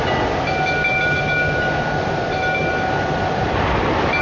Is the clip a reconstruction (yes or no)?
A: no